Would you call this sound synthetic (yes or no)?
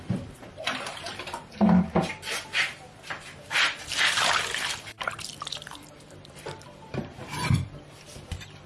yes